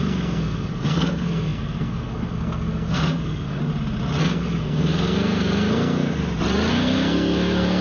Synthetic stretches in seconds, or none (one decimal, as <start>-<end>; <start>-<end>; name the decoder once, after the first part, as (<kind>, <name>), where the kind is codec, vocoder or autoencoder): 0.0-3.6 (codec, SNAC); 4.2-6.2; 6.7-7.8